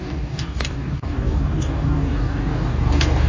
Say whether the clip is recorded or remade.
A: remade